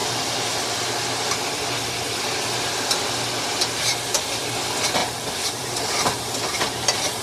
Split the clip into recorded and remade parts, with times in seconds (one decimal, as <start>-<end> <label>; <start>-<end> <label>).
0.0-5.0 recorded; 5.0-5.8 remade; 5.8-7.2 recorded